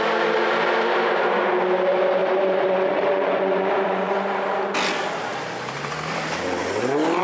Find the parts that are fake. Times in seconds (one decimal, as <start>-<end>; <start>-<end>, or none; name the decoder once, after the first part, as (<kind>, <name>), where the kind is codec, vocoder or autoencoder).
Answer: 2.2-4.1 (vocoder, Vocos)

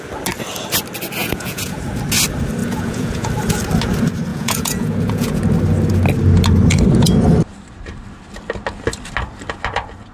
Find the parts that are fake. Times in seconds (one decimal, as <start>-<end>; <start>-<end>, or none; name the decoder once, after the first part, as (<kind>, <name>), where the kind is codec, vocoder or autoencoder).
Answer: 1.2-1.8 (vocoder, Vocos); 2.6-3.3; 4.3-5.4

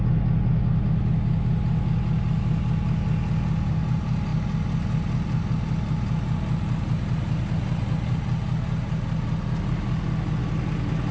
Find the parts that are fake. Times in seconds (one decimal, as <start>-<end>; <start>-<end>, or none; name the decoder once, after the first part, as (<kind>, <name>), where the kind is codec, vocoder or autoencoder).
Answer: none

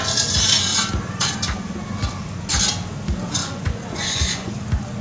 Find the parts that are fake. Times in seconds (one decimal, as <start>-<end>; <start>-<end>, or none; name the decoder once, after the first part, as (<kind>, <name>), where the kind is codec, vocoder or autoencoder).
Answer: 3.4-4.5 (vocoder, Vocos)

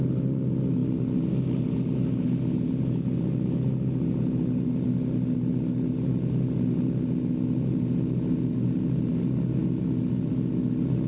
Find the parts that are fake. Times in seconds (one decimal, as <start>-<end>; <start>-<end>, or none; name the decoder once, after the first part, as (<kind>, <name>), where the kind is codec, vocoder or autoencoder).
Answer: none

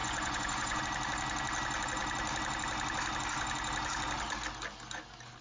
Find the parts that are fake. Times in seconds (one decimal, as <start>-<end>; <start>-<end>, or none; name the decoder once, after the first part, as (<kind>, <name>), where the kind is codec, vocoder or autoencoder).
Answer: 0.0-0.8 (vocoder, Vocos)